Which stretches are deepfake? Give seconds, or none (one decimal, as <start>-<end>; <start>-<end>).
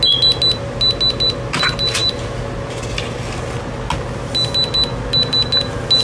none